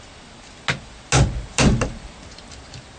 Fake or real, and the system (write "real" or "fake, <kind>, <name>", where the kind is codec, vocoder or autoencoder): real